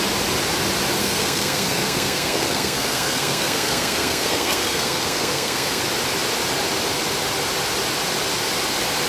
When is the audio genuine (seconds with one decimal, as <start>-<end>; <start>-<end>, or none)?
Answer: 0.0-1.0; 5.8-9.1